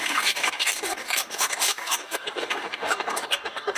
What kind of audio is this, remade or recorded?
remade